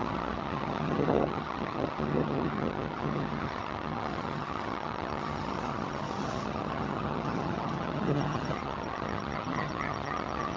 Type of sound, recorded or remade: remade